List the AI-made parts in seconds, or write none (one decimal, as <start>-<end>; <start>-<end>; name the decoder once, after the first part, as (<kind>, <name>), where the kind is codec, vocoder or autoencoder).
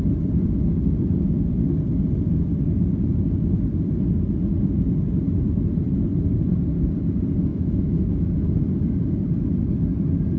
7.5-8.3 (autoencoder, DAC-VAE)